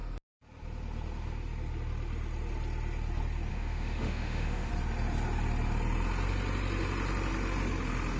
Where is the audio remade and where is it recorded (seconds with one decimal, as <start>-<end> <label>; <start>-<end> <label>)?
0.0-3.5 recorded; 3.5-4.7 remade; 4.7-8.2 recorded